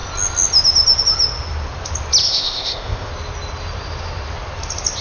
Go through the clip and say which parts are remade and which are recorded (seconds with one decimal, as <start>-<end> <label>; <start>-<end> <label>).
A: 0.0-2.2 recorded; 2.2-3.1 remade; 3.1-5.0 recorded